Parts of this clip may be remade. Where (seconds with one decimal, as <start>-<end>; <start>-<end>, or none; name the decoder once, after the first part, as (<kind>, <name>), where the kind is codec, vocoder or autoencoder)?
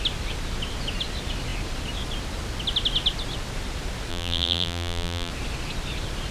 4.1-5.3 (vocoder, BigVGAN v2)